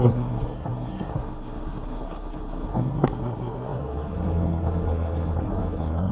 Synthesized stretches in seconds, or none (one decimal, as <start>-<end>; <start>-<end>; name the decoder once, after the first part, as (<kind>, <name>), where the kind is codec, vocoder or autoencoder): 0.0-6.1 (codec, SNAC)